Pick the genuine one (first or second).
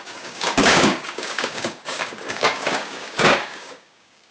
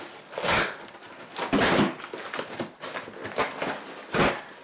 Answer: second